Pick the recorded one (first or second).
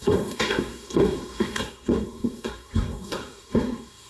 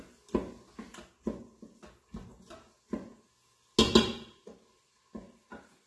second